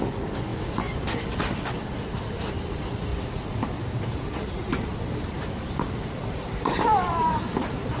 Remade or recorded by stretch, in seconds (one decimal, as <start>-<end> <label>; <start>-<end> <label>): 0.0-3.1 recorded; 3.1-8.0 remade